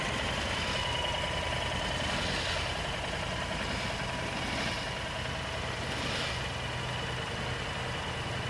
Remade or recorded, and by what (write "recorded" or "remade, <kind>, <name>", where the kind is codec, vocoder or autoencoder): recorded